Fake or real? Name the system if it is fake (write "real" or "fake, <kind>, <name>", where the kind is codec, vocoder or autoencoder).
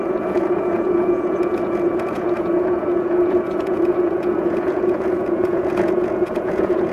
fake, vocoder, Vocos